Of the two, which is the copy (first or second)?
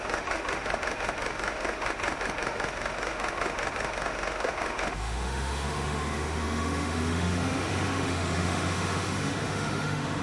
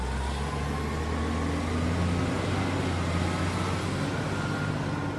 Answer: first